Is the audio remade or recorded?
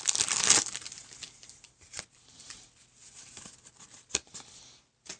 recorded